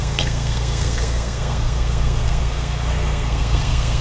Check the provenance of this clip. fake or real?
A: fake